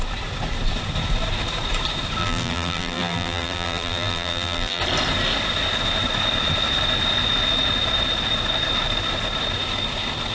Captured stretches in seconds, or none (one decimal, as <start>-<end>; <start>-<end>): 0.0-2.2; 4.8-10.3